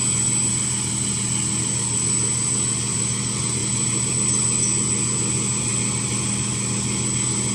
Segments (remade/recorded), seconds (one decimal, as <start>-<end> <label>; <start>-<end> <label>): 0.0-7.5 recorded